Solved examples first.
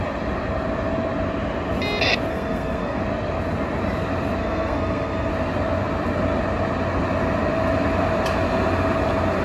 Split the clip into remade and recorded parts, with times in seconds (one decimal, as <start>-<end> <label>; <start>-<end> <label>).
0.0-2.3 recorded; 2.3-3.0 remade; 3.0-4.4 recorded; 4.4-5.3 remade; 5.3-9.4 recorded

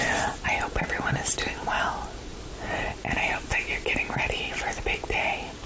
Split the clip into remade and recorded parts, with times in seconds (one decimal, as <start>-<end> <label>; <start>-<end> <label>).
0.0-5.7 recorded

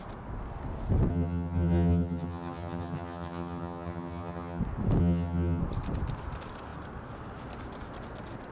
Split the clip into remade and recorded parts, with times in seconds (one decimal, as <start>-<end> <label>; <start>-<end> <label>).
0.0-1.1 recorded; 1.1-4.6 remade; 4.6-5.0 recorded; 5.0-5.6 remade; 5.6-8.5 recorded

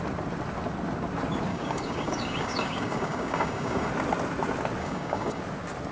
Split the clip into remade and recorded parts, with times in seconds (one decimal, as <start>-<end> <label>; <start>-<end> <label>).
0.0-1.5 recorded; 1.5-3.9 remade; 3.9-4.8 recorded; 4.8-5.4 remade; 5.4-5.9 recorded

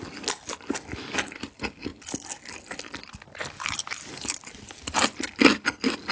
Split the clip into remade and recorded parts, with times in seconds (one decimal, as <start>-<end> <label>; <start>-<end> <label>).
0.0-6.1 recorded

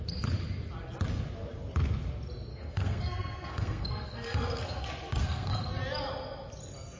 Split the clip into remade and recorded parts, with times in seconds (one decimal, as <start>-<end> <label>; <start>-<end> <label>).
0.0-2.5 recorded; 2.5-4.8 remade; 4.8-5.2 recorded; 5.2-5.7 remade; 5.7-7.0 recorded